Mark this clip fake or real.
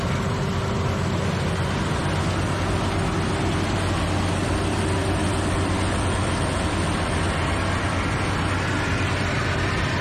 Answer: real